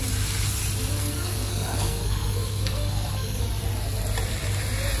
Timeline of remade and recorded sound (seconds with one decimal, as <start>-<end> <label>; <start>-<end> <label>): 0.0-1.0 recorded; 1.0-3.4 remade; 3.4-5.0 recorded